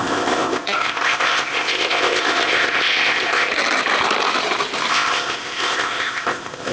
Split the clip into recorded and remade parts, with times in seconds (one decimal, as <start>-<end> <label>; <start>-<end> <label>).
0.0-3.5 remade; 3.5-4.9 recorded; 4.9-6.7 remade